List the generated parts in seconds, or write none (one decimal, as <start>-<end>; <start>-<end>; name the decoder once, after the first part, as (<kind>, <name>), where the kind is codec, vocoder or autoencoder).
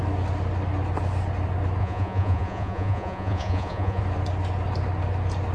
1.8-4.0 (vocoder, Vocos)